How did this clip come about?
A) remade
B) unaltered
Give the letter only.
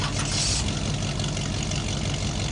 B